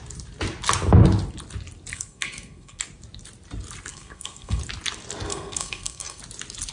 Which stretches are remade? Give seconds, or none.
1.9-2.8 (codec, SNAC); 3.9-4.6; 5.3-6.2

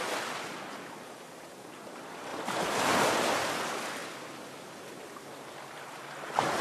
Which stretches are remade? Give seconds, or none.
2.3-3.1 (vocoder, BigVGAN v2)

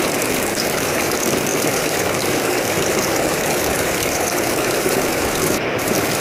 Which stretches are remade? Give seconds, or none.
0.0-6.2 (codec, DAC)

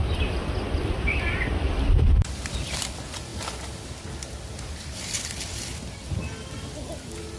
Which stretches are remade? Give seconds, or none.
0.0-3.3 (vocoder, BigVGAN v2); 4.7-5.7; 6.5-7.4

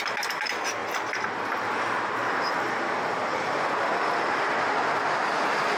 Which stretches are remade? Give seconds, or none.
none

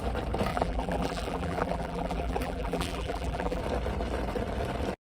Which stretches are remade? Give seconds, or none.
0.5-3.6 (vocoder, BigVGAN v2)

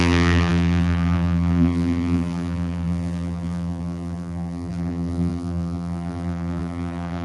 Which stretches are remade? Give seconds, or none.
0.0-7.2 (vocoder, BigVGAN v2)

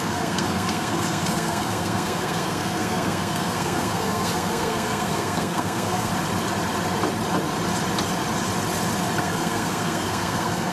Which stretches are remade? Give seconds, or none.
0.0-6.1 (codec, SNAC); 9.2-10.7